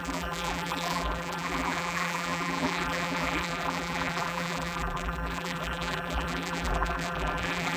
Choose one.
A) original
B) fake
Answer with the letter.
B